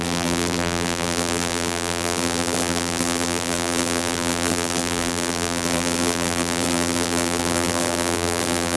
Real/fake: fake